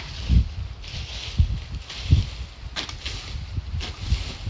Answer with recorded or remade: recorded